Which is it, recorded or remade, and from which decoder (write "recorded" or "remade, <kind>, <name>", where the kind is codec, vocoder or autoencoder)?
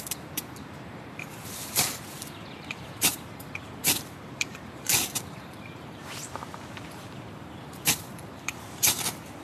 remade, vocoder, BigVGAN v2